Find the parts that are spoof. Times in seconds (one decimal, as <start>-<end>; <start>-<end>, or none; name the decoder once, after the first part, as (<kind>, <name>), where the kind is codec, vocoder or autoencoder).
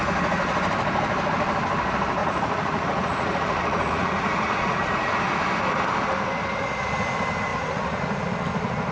2.2-5.2 (vocoder, Vocos); 7.5-8.2